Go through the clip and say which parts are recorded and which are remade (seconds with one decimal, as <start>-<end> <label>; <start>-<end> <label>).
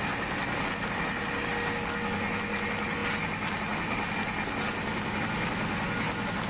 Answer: 0.0-6.5 recorded